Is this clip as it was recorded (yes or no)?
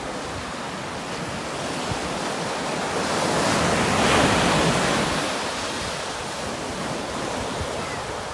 yes